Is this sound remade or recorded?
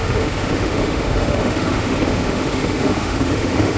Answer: remade